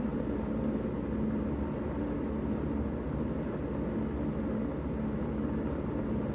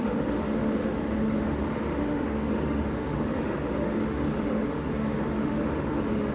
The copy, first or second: second